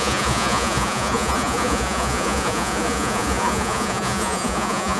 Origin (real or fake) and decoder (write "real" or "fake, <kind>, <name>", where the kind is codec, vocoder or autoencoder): fake, vocoder, Vocos